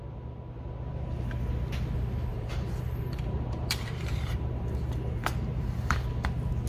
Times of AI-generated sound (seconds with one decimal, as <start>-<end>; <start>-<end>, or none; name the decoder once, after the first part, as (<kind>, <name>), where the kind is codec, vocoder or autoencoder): 2.3-6.0 (vocoder, BigVGAN v2)